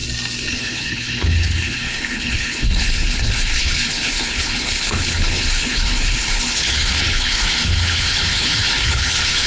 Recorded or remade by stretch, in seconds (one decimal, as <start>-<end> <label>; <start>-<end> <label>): 0.0-0.5 recorded; 0.5-9.5 remade